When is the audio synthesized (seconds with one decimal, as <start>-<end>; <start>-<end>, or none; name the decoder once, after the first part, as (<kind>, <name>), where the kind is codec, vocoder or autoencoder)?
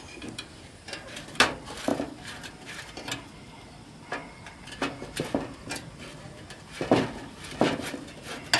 none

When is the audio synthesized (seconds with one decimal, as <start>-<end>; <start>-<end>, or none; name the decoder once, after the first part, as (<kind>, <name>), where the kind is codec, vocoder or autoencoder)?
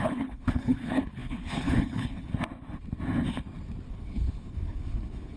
0.0-2.3 (codec, HILCodec); 3.9-5.4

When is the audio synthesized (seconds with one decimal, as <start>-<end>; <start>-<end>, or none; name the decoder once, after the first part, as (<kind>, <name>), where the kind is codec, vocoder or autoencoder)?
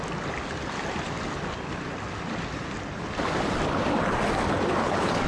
4.8-5.3 (codec, HILCodec)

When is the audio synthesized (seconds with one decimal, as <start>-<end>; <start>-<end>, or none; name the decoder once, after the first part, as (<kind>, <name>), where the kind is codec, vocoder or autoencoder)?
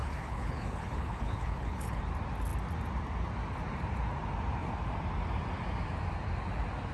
0.0-2.0 (codec, HILCodec)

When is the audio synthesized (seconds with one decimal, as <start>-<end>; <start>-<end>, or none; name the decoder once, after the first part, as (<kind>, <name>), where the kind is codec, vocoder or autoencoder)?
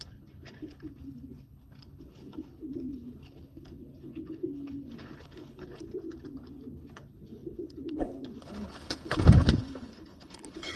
0.0-10.8 (codec, HILCodec)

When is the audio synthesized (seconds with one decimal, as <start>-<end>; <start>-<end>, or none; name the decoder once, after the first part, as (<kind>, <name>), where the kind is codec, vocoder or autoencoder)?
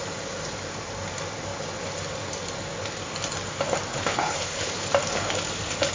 3.9-4.7 (codec, HILCodec)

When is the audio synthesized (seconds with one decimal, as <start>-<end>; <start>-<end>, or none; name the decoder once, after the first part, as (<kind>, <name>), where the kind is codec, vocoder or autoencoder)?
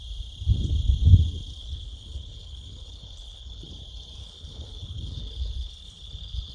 1.6-3.7 (codec, HILCodec); 4.2-6.5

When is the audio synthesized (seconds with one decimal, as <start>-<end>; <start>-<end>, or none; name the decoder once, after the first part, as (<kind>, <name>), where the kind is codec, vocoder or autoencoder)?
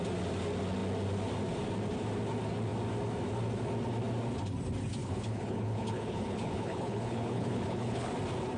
5.0-8.1 (codec, HILCodec)